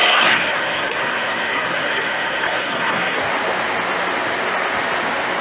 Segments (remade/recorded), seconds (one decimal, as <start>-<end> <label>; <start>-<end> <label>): 0.0-3.2 remade; 3.2-5.4 recorded